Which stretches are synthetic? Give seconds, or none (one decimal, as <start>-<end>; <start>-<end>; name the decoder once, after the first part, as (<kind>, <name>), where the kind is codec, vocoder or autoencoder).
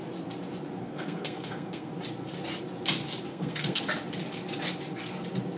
0.8-1.9 (codec, SNAC); 3.3-3.8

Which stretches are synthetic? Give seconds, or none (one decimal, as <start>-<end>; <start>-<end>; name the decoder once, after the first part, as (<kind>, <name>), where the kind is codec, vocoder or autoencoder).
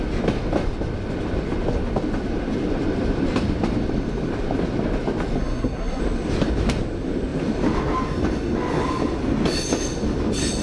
5.4-6.0 (codec, SNAC)